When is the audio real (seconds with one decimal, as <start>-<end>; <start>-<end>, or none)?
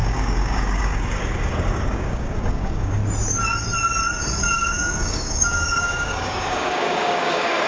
3.0-4.2